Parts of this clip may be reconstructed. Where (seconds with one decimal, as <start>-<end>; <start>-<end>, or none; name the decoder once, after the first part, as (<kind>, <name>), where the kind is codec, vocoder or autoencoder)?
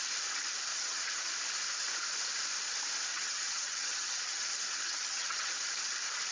0.7-1.3 (vocoder, HiFi-GAN); 3.1-5.5